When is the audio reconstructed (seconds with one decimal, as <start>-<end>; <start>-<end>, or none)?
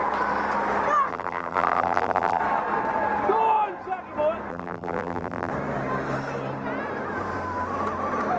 1.1-2.4; 4.5-5.5